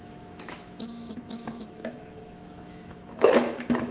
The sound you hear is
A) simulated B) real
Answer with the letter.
A